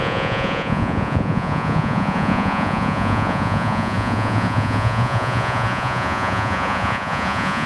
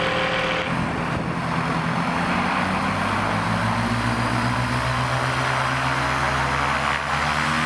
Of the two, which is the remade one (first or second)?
first